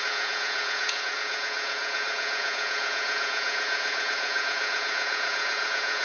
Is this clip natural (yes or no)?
no